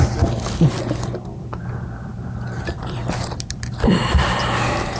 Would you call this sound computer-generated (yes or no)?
no